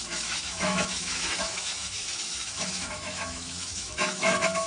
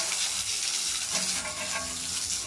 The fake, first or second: first